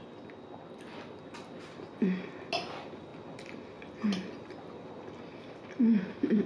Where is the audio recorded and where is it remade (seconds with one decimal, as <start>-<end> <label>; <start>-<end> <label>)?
0.0-6.5 recorded